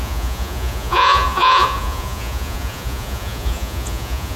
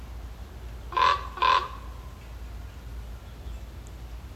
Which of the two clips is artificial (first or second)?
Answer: first